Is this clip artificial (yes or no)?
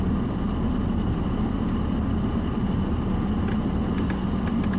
yes